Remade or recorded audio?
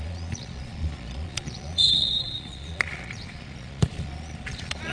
remade